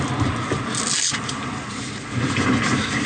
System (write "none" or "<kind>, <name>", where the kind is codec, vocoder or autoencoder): none